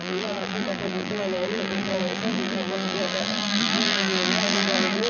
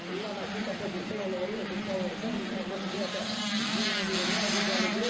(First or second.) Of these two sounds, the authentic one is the second